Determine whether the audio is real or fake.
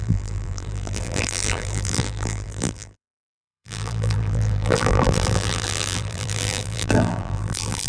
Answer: fake